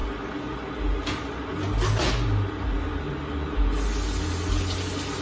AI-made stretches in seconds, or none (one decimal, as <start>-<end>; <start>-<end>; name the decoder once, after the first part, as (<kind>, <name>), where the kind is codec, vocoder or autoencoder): none